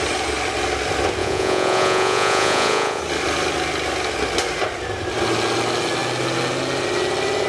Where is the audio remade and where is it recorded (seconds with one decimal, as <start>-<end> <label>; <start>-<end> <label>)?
0.0-1.2 recorded; 1.2-3.0 remade; 3.0-7.5 recorded